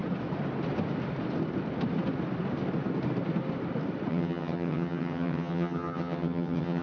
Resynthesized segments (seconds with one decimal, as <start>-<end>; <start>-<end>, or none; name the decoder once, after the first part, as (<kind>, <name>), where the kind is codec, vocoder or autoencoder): 4.1-6.8 (vocoder, HiFi-GAN)